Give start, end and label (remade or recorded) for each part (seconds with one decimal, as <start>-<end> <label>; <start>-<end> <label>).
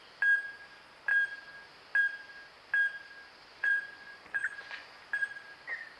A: 0.0-3.5 recorded; 3.5-5.0 remade; 5.0-6.0 recorded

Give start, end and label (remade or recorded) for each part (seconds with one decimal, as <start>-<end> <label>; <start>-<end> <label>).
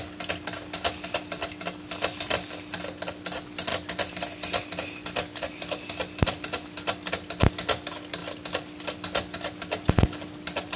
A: 0.0-10.8 recorded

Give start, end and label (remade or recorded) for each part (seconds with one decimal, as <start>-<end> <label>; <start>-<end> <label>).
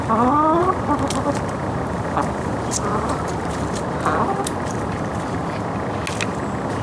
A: 0.0-6.8 recorded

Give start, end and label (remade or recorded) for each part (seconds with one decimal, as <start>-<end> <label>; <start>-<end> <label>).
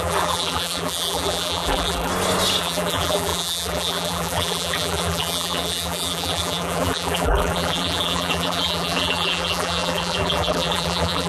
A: 0.0-2.1 remade; 2.1-2.6 recorded; 2.6-11.3 remade